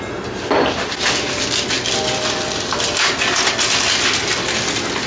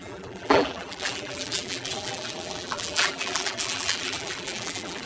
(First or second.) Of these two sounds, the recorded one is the first